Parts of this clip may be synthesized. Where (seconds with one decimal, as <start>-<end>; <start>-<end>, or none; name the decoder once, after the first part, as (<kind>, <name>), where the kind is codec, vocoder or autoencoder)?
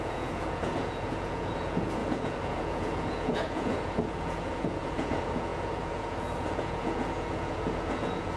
0.0-8.4 (vocoder, Vocos)